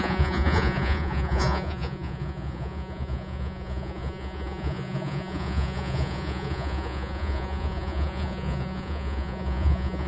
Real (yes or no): no